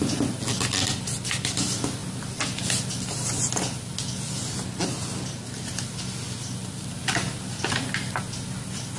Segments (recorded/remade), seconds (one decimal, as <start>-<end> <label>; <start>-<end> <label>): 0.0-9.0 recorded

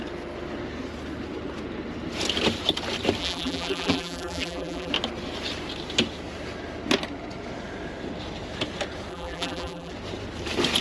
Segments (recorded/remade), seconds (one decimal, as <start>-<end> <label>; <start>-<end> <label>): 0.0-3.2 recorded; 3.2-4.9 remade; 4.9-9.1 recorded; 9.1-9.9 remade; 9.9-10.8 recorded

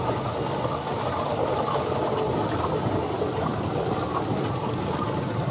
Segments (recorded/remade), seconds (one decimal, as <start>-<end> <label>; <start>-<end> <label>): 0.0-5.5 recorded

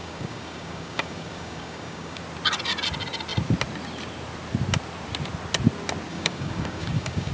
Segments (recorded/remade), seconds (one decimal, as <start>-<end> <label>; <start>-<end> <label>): 0.0-2.2 remade; 2.2-6.1 recorded; 6.1-7.3 remade